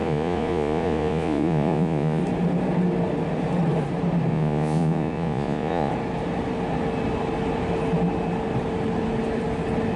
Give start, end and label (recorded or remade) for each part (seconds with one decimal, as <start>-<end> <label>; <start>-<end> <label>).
0.0-2.2 remade; 2.2-4.3 recorded; 4.3-5.9 remade; 5.9-10.0 recorded